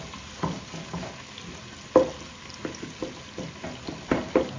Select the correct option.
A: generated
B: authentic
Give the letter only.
B